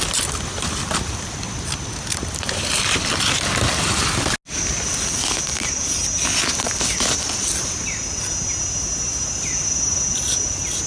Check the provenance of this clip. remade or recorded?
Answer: recorded